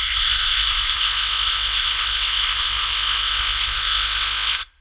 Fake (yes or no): yes